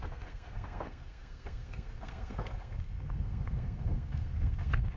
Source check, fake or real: fake